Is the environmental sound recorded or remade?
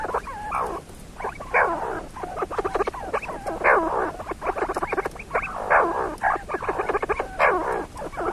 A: recorded